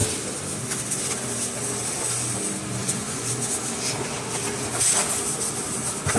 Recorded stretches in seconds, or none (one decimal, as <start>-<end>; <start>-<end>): 0.0-2.8; 3.3-6.2

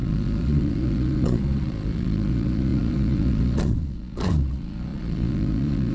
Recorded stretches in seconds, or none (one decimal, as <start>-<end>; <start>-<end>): none

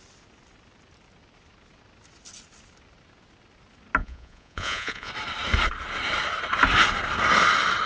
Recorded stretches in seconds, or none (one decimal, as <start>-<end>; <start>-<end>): 0.0-4.0; 5.1-7.9

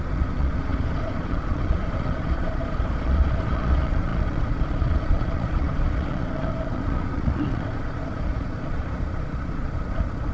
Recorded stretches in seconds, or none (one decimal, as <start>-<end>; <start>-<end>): none

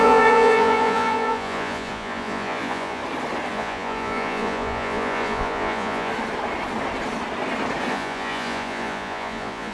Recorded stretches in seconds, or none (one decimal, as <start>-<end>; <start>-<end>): 3.0-3.5; 6.1-7.9

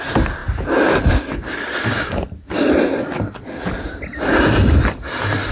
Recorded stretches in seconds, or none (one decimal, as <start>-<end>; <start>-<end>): 0.0-5.5